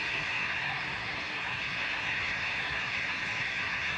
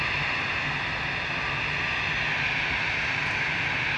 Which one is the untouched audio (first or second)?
second